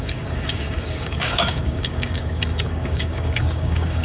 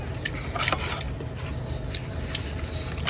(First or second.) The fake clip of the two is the first